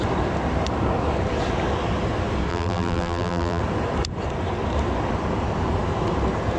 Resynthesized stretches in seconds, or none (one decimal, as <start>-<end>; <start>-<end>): 2.5-3.6